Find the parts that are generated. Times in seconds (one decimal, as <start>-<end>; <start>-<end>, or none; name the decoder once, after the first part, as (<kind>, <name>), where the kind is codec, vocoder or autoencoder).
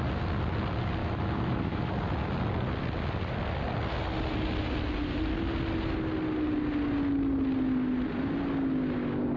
1.0-1.9 (autoencoder, DAC-VAE)